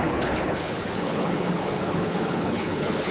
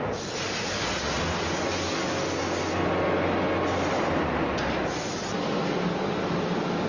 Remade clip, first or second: first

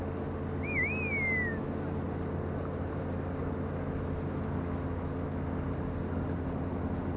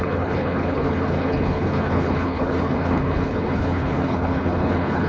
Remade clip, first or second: second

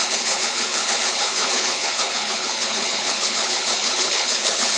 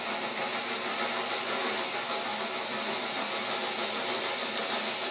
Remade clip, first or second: first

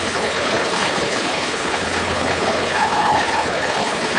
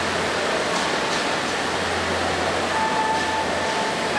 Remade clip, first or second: first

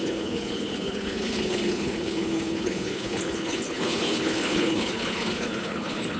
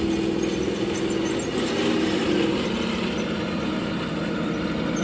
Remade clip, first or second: first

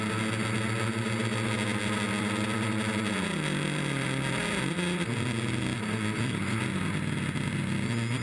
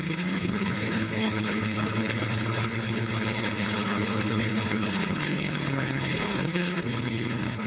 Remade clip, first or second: second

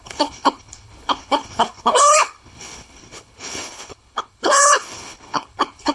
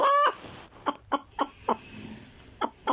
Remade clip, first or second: first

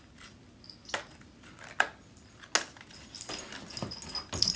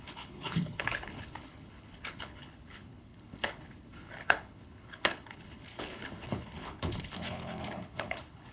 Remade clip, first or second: second